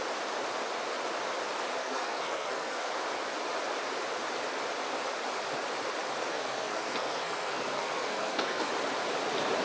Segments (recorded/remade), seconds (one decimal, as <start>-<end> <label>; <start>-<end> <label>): 0.0-1.8 recorded; 1.8-2.9 remade; 2.9-6.3 recorded; 6.3-8.7 remade; 8.7-9.6 recorded